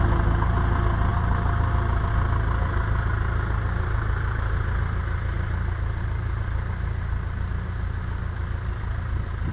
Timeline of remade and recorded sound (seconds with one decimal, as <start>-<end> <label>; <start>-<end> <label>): 0.0-9.5 recorded